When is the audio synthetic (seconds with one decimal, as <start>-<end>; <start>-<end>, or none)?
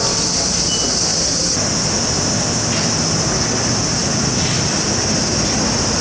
none